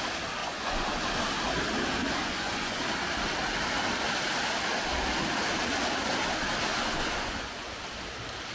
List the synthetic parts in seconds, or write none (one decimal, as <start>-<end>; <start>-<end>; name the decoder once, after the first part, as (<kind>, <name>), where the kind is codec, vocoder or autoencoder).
0.4-1.1 (vocoder, Vocos); 2.0-2.8; 6.7-7.8